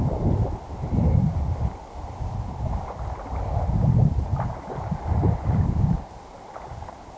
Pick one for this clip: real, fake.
real